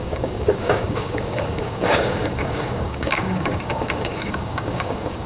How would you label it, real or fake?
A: fake